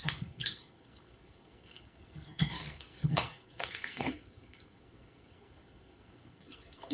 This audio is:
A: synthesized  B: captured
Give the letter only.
A